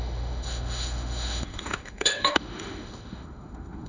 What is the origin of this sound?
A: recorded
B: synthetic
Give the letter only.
B